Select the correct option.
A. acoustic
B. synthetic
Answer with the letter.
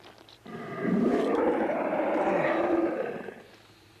A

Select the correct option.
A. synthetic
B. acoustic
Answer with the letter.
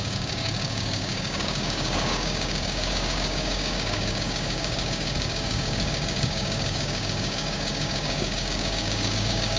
A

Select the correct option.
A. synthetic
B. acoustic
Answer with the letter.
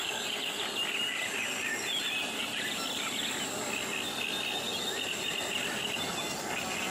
B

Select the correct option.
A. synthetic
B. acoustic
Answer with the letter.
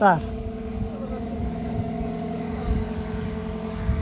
A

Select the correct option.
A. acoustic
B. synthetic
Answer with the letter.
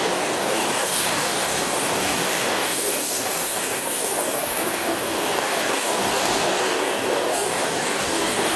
B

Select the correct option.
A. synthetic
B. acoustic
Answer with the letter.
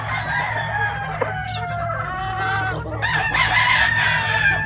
B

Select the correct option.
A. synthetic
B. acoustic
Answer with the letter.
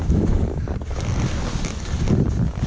B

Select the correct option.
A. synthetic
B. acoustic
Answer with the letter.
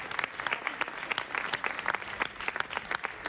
B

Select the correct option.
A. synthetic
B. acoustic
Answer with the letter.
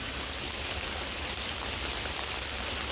B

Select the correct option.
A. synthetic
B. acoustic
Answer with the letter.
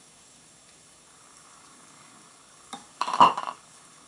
A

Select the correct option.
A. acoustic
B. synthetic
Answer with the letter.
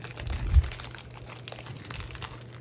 A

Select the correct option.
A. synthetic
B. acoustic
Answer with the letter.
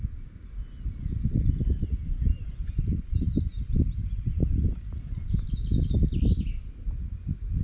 B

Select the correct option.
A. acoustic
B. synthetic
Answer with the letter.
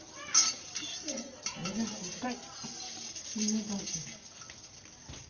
A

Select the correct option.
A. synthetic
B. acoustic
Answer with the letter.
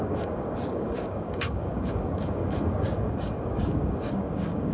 A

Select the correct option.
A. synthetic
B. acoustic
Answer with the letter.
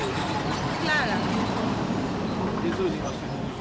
B